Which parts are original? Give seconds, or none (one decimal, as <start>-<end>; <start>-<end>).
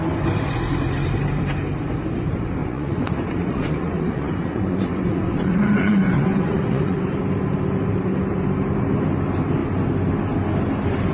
0.0-2.6; 7.0-11.1